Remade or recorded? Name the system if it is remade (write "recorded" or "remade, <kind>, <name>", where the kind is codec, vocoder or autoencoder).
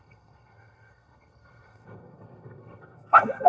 remade, codec, SNAC